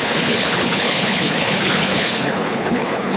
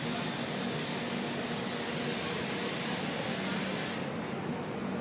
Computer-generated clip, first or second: first